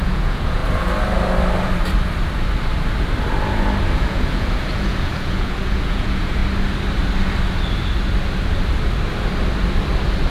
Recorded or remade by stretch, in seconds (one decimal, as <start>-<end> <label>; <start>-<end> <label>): 0.0-0.6 remade; 0.6-4.0 recorded; 4.0-6.4 remade; 6.4-10.3 recorded